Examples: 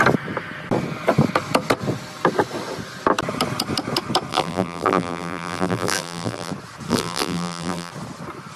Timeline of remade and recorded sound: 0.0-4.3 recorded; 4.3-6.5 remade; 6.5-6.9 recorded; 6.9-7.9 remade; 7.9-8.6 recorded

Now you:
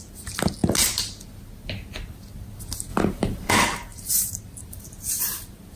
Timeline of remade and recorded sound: 0.0-2.9 recorded; 2.9-3.5 remade; 3.5-3.9 recorded; 3.9-4.7 remade; 4.7-5.8 recorded

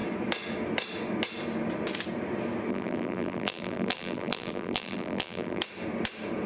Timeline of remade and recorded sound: 0.0-2.7 recorded; 2.7-5.6 remade; 5.6-6.5 recorded

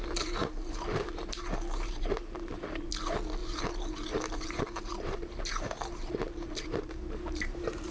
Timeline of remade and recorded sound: 0.0-0.4 recorded; 0.4-2.9 remade; 2.9-3.4 recorded; 3.4-7.9 remade

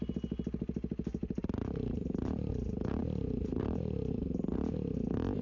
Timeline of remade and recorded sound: 0.0-1.2 recorded; 1.2-2.5 remade; 2.5-3.0 recorded; 3.0-4.1 remade; 4.1-5.4 recorded

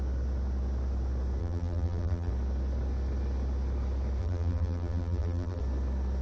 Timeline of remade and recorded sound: 0.0-1.4 recorded; 1.4-2.3 remade; 2.3-4.2 recorded; 4.2-5.6 remade; 5.6-6.2 recorded

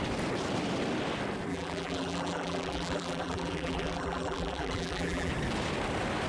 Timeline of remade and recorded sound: 0.0-1.5 recorded; 1.5-5.3 remade; 5.3-6.3 recorded